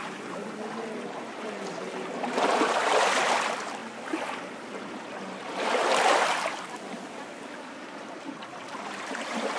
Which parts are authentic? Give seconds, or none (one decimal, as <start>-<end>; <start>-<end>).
0.0-9.6